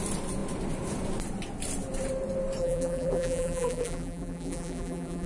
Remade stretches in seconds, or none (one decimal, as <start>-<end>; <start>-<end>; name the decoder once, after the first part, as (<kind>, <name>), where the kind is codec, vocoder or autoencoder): 2.6-5.3 (vocoder, BigVGAN v2)